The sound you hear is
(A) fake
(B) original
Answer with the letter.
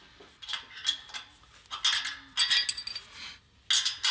B